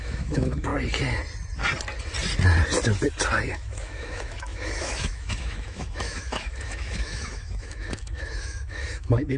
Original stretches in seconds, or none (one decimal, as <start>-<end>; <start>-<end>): 0.7-3.5